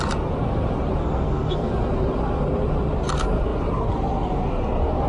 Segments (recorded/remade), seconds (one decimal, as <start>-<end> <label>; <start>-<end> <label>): 0.0-1.0 recorded; 1.0-1.7 remade; 1.7-5.1 recorded